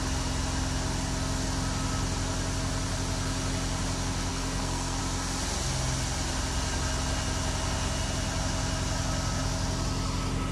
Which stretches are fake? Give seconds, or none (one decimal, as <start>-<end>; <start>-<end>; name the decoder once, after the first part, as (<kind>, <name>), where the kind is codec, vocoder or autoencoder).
4.3-5.0 (codec, SNAC)